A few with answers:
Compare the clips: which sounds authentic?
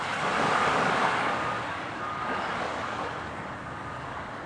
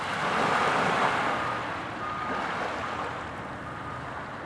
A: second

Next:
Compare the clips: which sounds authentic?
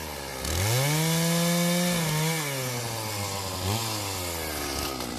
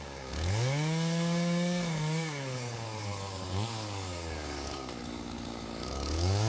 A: first